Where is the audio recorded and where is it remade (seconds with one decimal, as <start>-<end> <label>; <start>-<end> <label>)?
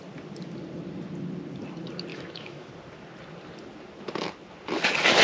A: 0.0-2.1 recorded; 2.1-2.7 remade; 2.7-5.2 recorded